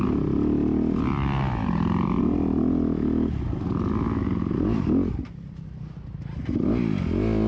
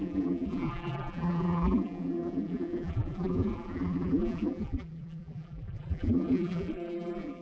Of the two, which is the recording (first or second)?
first